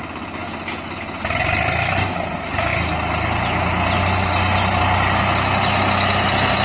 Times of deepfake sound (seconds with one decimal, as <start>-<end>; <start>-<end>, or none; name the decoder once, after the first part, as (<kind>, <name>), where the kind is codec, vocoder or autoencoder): none